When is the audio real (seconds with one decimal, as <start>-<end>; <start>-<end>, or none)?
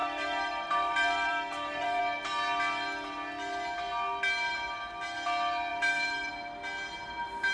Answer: 2.0-5.7; 6.3-7.5